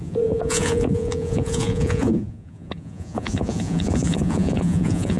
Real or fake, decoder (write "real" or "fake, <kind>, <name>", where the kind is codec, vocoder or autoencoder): fake, vocoder, Vocos